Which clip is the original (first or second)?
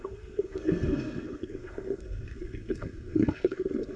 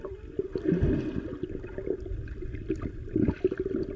second